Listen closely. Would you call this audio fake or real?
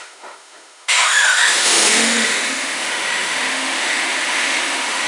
fake